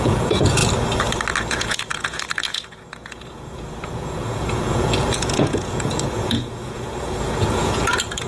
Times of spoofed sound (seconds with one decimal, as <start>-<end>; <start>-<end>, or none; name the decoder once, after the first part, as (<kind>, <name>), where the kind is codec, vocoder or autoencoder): 0.0-0.6 (vocoder, Vocos); 1.4-8.3